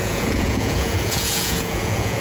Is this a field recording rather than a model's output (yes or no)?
no